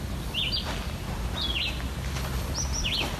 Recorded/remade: recorded